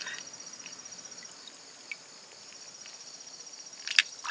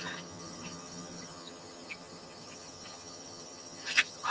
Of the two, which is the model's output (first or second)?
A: second